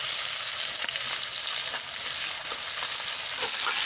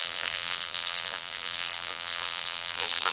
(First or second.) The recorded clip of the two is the first